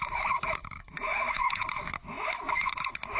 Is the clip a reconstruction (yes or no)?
yes